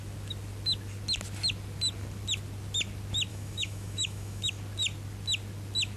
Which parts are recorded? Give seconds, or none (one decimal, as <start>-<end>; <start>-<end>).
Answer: 0.0-3.3; 4.5-6.0